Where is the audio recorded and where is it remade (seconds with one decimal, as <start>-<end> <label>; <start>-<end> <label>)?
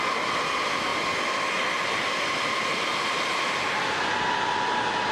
0.0-5.1 recorded